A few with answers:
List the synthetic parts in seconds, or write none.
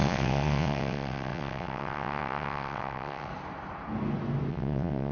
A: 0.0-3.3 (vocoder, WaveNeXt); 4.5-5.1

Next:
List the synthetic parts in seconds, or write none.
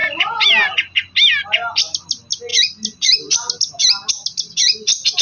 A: none